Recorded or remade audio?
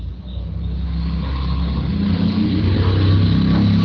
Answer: recorded